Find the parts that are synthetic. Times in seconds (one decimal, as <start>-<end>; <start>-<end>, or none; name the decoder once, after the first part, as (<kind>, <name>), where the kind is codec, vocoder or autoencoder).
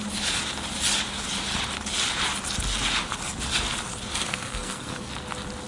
4.1-5.1 (codec, SNAC)